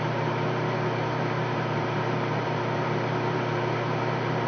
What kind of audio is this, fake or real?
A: fake